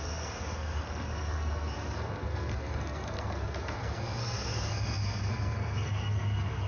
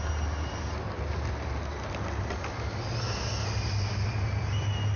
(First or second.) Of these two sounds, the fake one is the first